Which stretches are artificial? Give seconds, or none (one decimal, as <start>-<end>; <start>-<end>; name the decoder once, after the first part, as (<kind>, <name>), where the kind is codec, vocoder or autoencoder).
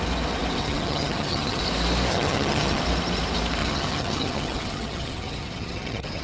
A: 0.6-1.6 (vocoder, HiFi-GAN); 2.1-2.8; 3.6-6.2